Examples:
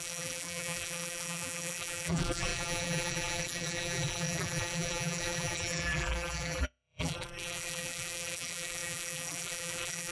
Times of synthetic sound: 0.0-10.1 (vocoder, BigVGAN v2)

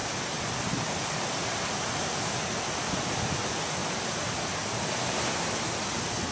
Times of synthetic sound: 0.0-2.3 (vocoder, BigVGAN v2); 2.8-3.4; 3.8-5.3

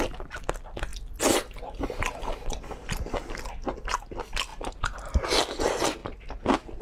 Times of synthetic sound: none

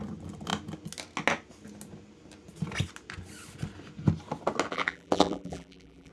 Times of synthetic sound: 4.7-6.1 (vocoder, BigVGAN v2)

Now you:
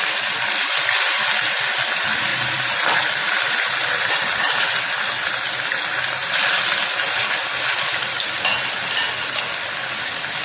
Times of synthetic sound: 2.3-4.4 (vocoder, BigVGAN v2); 6.2-7.7